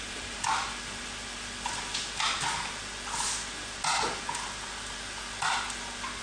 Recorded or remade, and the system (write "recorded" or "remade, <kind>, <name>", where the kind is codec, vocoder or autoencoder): recorded